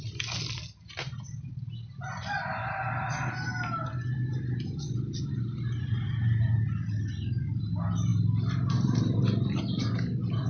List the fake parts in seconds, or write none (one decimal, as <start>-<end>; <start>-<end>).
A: none